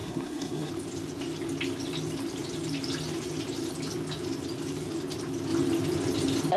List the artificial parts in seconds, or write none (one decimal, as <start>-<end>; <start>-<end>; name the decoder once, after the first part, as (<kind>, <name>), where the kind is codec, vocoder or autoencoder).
0.0-0.7 (codec, SNAC)